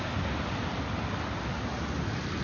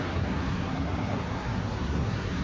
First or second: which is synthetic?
second